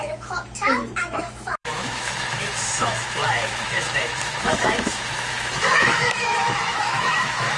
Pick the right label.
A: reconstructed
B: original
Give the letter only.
A